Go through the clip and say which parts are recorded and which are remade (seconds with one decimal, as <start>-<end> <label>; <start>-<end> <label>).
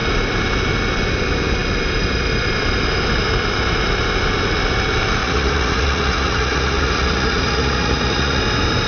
0.0-5.2 recorded; 5.2-8.4 remade; 8.4-8.9 recorded